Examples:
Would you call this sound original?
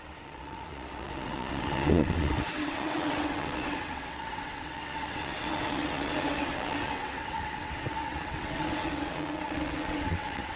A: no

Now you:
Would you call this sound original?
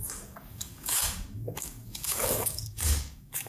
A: no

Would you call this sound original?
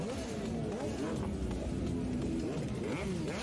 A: yes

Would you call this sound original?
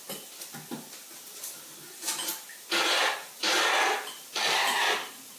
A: yes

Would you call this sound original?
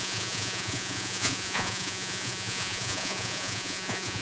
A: no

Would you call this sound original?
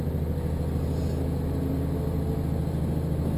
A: yes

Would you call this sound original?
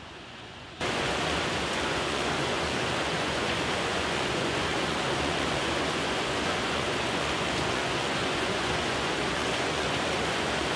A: no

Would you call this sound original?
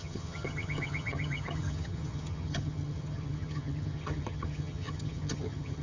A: no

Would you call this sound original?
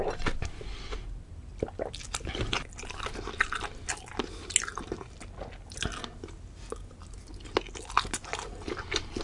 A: yes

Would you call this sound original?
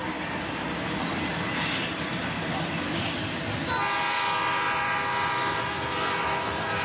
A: yes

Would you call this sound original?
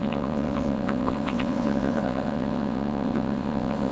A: no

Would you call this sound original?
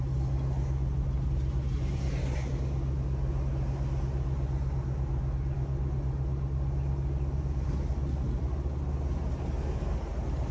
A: yes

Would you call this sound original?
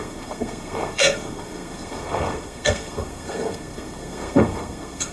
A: no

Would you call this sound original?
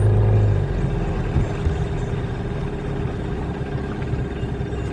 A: yes